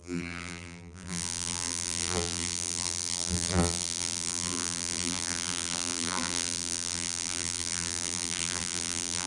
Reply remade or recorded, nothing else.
remade